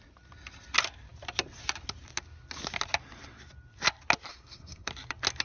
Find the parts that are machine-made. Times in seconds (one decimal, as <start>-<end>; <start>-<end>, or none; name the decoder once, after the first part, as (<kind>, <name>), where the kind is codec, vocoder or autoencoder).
4.3-4.9 (codec, SNAC)